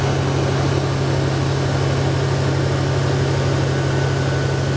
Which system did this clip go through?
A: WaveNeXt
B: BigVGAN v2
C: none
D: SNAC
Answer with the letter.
C